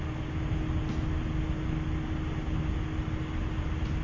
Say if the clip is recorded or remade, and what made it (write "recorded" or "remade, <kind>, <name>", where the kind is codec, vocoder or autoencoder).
recorded